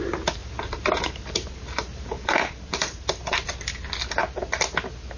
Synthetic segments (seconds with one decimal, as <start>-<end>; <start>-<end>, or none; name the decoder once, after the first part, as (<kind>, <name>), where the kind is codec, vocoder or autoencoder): 0.4-3.5 (vocoder, BigVGAN v2)